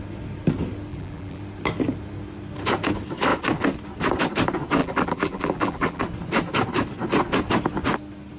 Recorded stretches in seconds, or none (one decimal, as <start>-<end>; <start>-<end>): 0.0-0.9; 1.4-4.8; 6.0-8.4